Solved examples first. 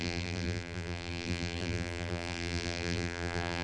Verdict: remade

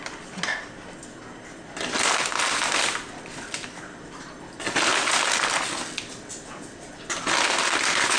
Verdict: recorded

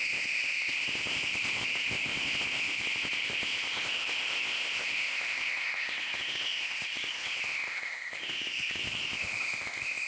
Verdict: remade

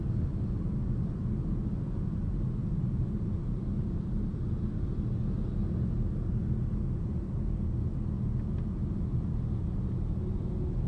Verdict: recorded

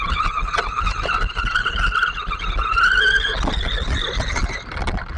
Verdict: recorded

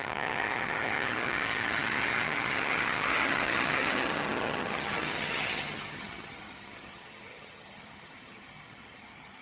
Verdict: remade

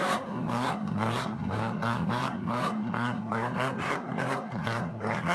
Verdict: remade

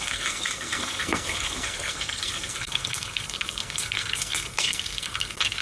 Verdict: remade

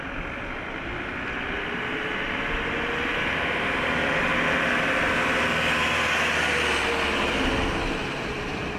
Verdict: recorded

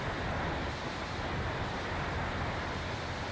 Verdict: recorded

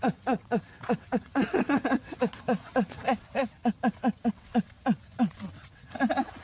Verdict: remade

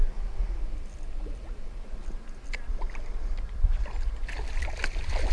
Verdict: recorded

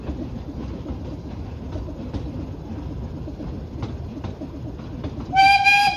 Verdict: recorded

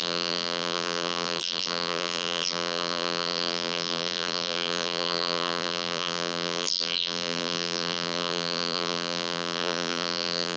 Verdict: remade